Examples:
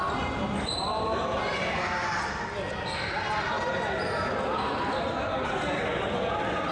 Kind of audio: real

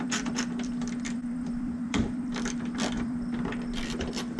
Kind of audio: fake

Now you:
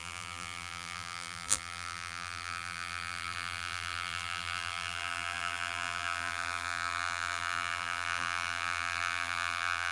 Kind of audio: fake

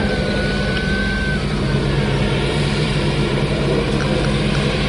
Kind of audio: fake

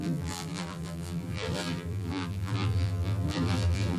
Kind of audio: fake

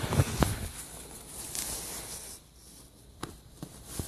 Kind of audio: real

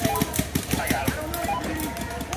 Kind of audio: real